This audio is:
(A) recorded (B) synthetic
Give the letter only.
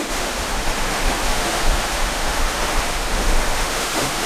B